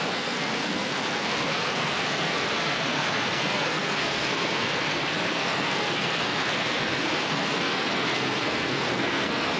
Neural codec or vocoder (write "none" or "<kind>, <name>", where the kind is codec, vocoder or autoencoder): codec, SNAC